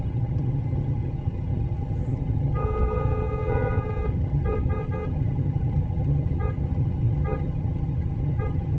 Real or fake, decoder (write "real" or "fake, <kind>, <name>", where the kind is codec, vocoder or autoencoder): fake, vocoder, HiFi-GAN